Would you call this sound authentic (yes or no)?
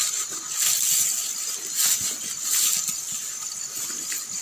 yes